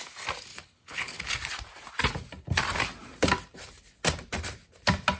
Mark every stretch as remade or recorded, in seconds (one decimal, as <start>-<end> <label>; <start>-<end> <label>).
0.0-0.5 recorded; 0.5-1.3 remade; 1.3-5.2 recorded